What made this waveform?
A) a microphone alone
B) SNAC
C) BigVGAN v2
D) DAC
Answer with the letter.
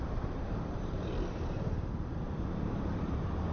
C